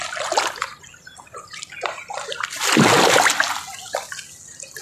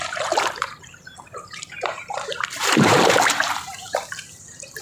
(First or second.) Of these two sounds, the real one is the first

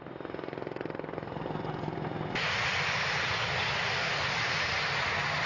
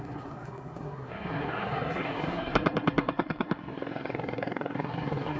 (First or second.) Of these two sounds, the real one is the first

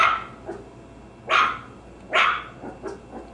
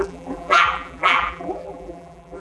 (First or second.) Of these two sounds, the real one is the first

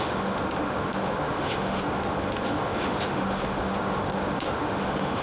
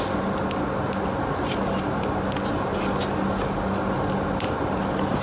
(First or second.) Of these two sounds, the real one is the second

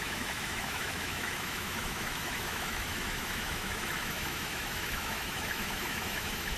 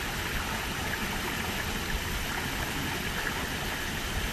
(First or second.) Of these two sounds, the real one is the second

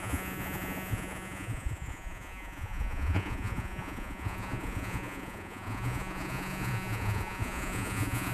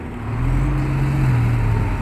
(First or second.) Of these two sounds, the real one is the second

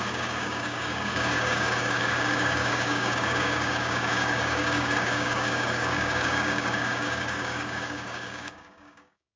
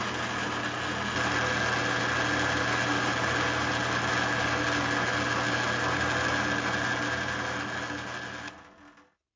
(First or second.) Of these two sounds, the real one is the second